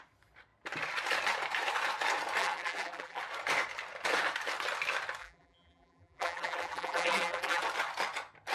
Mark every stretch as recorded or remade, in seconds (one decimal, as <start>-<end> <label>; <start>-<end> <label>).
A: 0.0-2.4 recorded; 2.4-3.2 remade; 3.2-5.2 recorded; 5.2-7.6 remade; 7.6-8.5 recorded